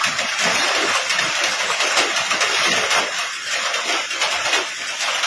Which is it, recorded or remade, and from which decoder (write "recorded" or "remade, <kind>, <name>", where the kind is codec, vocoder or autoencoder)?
remade, vocoder, BigVGAN v2